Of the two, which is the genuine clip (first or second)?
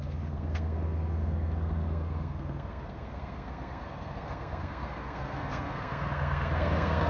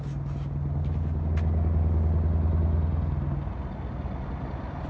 second